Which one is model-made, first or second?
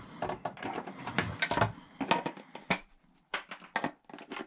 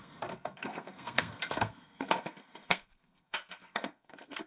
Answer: second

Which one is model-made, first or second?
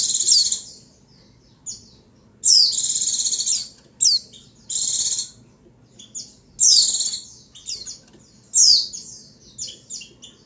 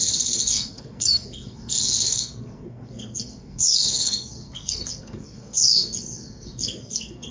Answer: second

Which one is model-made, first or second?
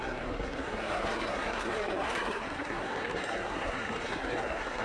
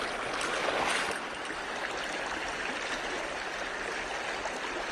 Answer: first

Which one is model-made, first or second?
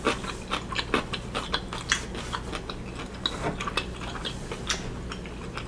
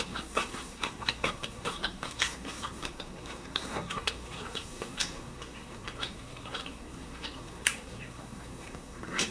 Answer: second